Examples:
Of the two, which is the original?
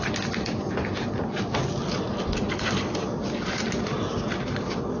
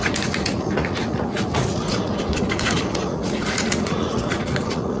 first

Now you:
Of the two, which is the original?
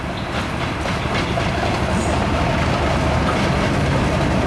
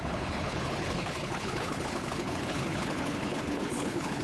first